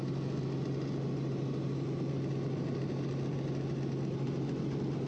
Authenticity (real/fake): real